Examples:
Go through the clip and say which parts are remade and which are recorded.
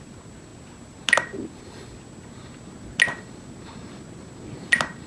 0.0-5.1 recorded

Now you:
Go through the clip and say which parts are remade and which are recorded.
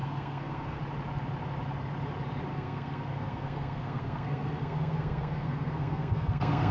0.0-0.8 remade; 0.8-2.5 recorded; 2.5-6.7 remade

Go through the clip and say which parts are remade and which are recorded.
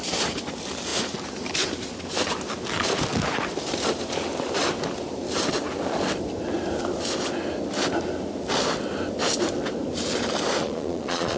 0.0-10.6 recorded; 10.6-11.4 remade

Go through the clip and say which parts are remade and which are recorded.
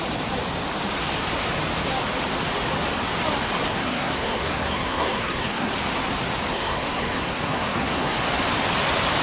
0.0-3.7 recorded; 3.7-5.7 remade; 5.7-6.5 recorded; 6.5-8.2 remade; 8.2-9.2 recorded